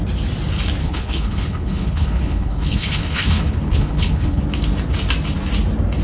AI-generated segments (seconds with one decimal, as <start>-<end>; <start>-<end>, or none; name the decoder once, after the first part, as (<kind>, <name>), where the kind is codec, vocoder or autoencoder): 0.8-4.4 (codec, HILCodec)